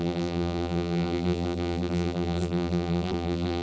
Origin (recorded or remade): remade